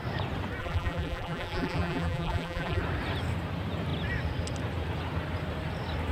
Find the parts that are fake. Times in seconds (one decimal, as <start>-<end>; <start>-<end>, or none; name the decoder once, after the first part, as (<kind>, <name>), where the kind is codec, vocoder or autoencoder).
0.6-2.8 (vocoder, BigVGAN v2)